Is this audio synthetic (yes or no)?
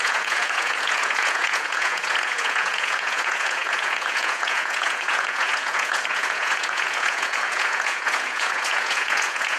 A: yes